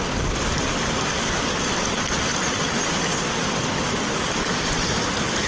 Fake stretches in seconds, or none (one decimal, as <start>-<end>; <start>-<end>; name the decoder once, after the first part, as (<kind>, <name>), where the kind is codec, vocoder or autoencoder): none